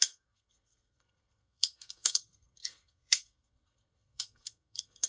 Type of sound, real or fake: fake